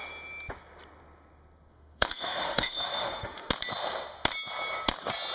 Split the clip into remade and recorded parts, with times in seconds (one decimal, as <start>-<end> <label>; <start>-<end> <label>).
0.0-1.7 recorded; 1.7-3.5 remade; 3.5-5.3 recorded